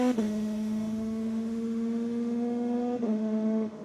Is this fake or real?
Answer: fake